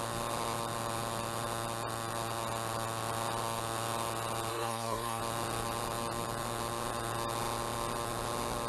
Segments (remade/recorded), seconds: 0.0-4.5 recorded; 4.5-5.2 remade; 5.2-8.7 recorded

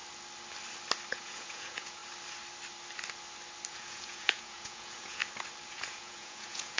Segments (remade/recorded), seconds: 0.0-1.1 recorded; 1.1-2.0 remade; 2.0-3.7 recorded; 3.7-5.2 remade; 5.2-5.7 recorded; 5.7-6.8 remade

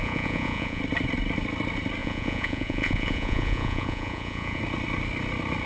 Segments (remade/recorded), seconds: 0.0-0.8 remade; 0.8-2.0 recorded; 2.0-4.6 remade; 4.6-5.7 recorded